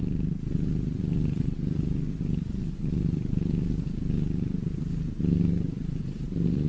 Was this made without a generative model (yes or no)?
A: yes